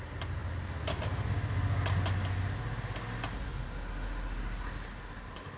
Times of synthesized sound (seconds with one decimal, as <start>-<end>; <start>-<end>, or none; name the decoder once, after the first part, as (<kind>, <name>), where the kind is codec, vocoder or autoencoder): none